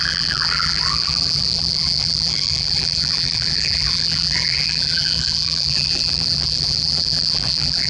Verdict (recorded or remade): remade